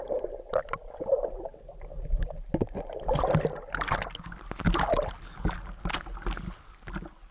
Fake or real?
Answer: real